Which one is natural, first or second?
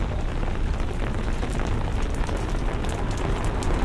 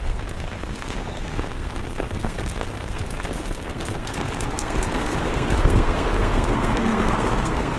first